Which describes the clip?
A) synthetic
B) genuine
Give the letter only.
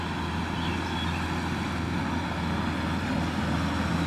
B